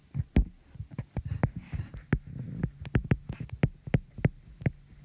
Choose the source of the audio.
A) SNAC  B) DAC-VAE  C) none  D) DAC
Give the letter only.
C